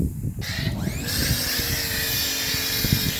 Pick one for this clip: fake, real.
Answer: real